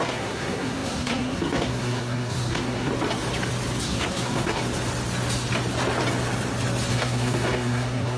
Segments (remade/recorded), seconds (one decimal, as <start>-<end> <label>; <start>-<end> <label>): 0.0-2.9 remade; 2.9-3.8 recorded; 3.8-4.6 remade; 4.6-6.9 recorded; 6.9-8.2 remade